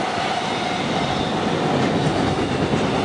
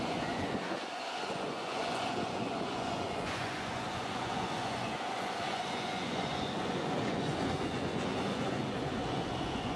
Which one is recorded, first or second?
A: first